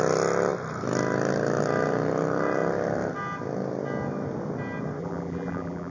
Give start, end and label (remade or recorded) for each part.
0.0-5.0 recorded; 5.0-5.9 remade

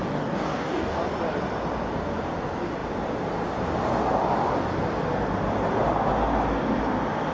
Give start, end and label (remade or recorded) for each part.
0.0-1.0 remade; 1.0-7.3 recorded

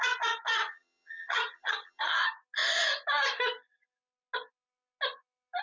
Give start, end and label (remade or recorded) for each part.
0.0-0.5 recorded; 0.5-2.1 remade; 2.1-5.6 recorded

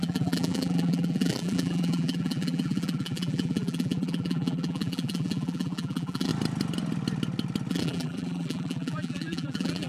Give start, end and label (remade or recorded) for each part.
0.0-6.3 remade; 6.3-7.7 recorded; 7.7-9.9 remade

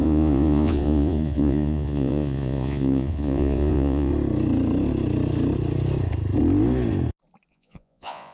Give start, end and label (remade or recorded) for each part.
0.0-4.1 remade; 4.1-7.5 recorded; 7.5-8.3 remade

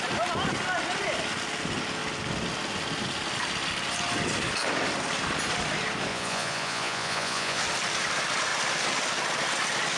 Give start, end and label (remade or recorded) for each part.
0.0-6.1 recorded; 6.1-7.6 remade; 7.6-10.0 recorded